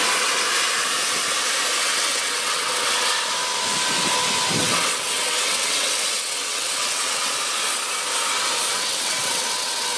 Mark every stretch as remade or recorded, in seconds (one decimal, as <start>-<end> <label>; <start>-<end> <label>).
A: 0.0-1.9 recorded; 1.9-3.1 remade; 3.1-4.6 recorded; 4.6-7.3 remade; 7.3-8.7 recorded; 8.7-10.0 remade